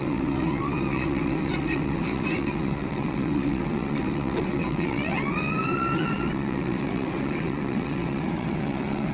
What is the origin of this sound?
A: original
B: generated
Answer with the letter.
B